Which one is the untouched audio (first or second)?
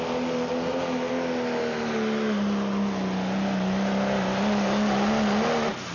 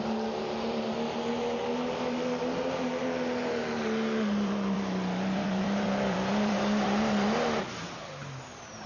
first